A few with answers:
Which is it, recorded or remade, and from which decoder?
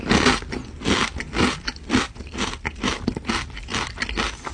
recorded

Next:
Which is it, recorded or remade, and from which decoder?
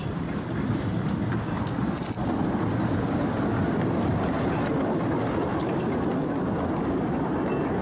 recorded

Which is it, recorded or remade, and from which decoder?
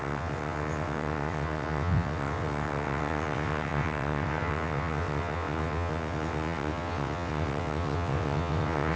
remade, vocoder, WaveNeXt